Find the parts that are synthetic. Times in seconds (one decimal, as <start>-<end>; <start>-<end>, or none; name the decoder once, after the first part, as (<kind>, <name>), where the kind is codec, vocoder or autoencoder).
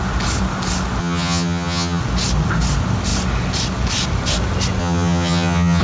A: 1.0-2.0 (vocoder, HiFi-GAN); 4.8-5.8